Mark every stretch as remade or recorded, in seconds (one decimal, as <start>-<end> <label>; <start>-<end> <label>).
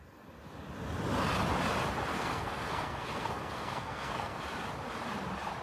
0.0-2.1 recorded; 2.1-4.4 remade; 4.4-5.6 recorded